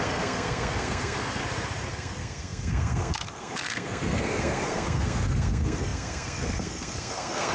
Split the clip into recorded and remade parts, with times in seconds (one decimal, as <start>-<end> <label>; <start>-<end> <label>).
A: 0.0-1.4 remade; 1.4-1.9 recorded; 1.9-7.5 remade